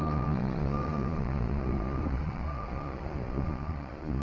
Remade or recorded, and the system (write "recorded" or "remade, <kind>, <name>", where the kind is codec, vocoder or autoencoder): remade, vocoder, Vocos